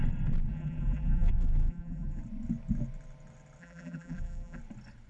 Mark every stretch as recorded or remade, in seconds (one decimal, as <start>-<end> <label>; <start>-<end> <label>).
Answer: 0.0-0.5 recorded; 0.5-2.2 remade; 2.2-3.6 recorded; 3.6-4.6 remade; 4.6-5.1 recorded